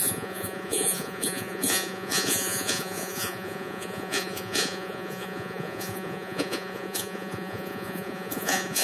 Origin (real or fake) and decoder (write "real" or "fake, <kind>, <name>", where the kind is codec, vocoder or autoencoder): fake, vocoder, Vocos